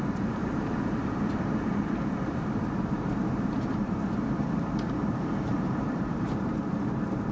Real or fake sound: fake